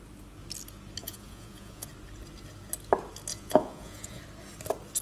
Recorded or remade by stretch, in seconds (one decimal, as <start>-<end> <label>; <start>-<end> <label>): 0.0-1.0 recorded; 1.0-1.9 remade; 1.9-3.3 recorded; 3.3-4.2 remade; 4.2-5.0 recorded

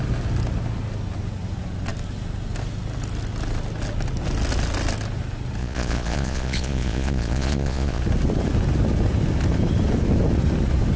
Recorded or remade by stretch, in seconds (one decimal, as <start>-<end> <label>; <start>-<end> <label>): 0.0-5.6 recorded; 5.6-8.0 remade; 8.0-11.0 recorded

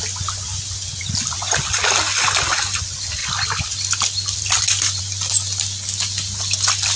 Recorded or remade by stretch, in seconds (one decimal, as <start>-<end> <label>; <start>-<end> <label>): 0.0-7.0 recorded

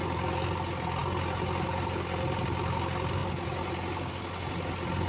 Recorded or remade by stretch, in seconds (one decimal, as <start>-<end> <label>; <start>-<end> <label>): 0.0-5.1 recorded

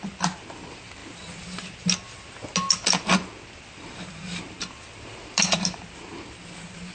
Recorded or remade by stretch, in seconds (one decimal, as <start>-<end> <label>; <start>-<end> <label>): 0.0-6.9 recorded